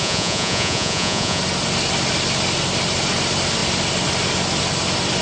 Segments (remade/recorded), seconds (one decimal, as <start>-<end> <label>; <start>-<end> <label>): 0.0-1.4 remade; 1.4-5.2 recorded